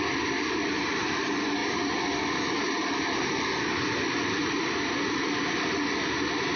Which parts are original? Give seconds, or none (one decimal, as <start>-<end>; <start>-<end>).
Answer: 0.0-6.6